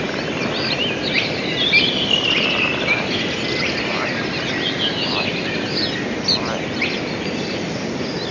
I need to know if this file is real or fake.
real